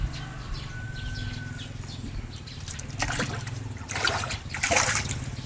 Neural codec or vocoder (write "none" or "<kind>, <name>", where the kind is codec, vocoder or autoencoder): none